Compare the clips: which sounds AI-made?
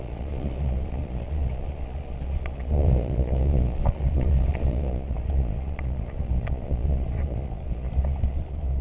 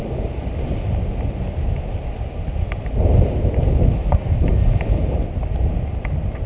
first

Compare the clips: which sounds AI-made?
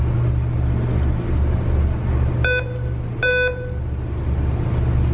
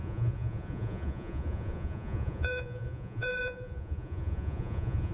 second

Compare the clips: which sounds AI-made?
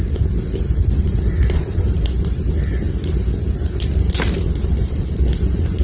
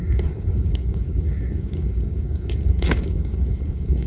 second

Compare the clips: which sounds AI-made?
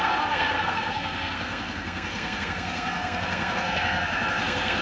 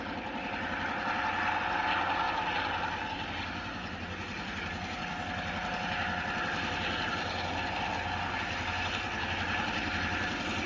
first